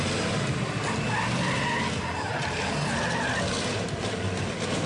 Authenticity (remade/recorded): recorded